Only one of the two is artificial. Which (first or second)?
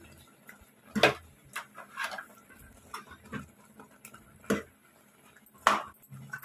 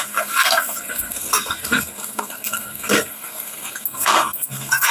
second